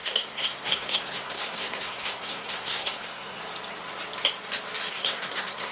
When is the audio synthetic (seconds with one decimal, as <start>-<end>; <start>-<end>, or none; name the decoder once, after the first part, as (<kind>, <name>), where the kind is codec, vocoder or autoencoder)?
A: 0.0-3.4 (codec, SNAC); 4.9-5.7